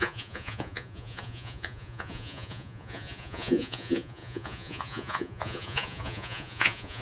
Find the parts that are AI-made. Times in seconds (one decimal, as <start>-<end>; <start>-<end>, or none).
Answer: 0.0-7.0